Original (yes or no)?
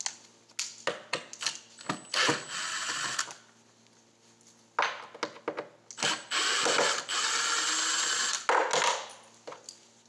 yes